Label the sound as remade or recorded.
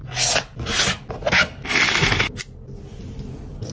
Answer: recorded